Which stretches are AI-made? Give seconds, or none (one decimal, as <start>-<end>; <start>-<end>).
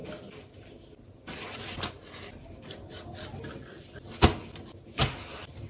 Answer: none